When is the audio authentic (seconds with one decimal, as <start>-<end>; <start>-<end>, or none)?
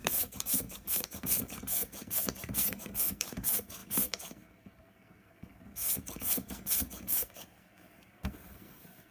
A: none